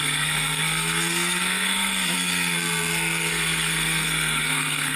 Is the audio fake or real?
fake